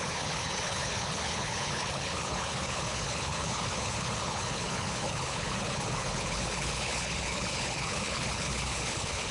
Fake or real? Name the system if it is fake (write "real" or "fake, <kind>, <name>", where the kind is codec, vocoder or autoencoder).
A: fake, codec, HILCodec